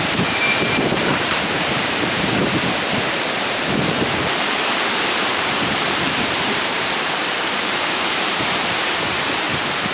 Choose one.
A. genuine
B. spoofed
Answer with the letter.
B